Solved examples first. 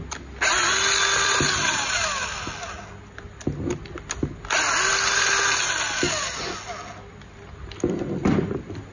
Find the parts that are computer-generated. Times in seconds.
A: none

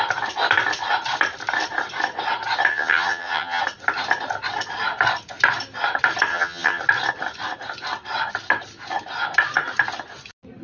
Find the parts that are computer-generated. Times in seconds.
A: 2.7-3.6 (vocoder, HiFi-GAN); 6.3-6.8

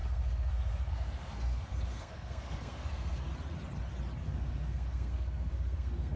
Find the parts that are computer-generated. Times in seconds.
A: 0.0-3.3 (codec, SNAC); 4.2-6.2

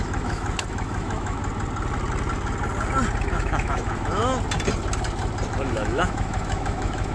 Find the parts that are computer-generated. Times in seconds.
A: 0.0-1.4 (autoencoder, DAC-VAE); 3.3-4.2; 5.5-7.1